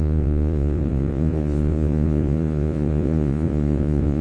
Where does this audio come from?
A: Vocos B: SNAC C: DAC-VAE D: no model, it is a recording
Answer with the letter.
A